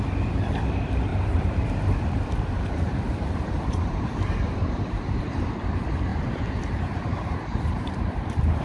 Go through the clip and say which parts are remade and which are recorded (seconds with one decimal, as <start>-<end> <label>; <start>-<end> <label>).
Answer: 0.0-1.1 recorded; 1.1-5.2 remade; 5.2-6.1 recorded; 6.1-8.6 remade